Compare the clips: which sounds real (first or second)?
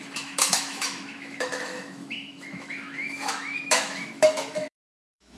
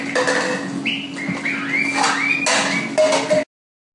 second